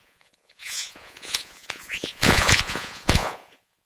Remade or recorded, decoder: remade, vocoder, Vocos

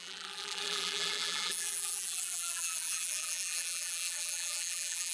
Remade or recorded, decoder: remade, vocoder, BigVGAN v2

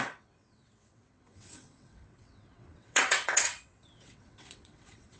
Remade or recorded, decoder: remade, vocoder, WaveNeXt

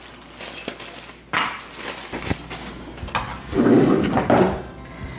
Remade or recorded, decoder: recorded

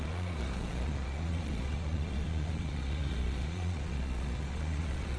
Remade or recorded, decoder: remade, vocoder, Vocos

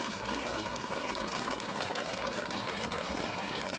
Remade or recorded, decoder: remade, codec, SNAC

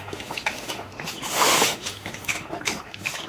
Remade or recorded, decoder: remade, autoencoder, DAC-VAE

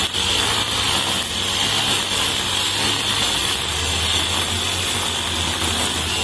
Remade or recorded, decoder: recorded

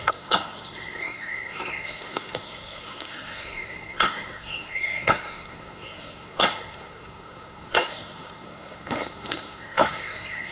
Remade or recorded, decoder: remade, codec, SNAC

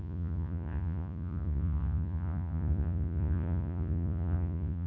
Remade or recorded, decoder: remade, vocoder, Vocos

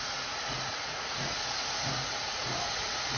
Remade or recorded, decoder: remade, vocoder, Vocos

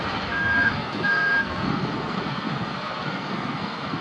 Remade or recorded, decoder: remade, codec, SNAC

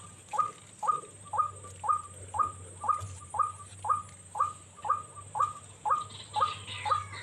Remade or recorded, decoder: recorded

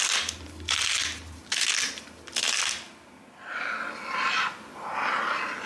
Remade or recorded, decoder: recorded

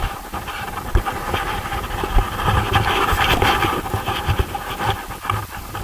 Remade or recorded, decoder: recorded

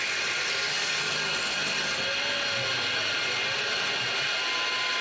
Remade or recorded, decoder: recorded